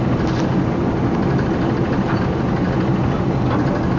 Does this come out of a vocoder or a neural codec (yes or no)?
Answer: no